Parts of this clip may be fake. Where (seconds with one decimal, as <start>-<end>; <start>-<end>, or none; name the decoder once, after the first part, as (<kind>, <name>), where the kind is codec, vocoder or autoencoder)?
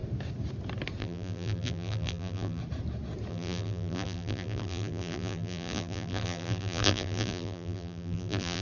1.0-2.6 (vocoder, BigVGAN v2); 3.3-8.6